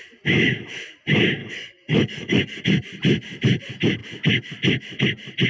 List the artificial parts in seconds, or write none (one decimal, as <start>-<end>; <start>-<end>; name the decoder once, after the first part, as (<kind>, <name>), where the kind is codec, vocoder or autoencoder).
1.4-2.6 (codec, DAC)